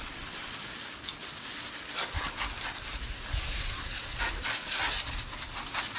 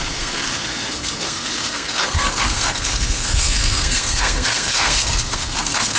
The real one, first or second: first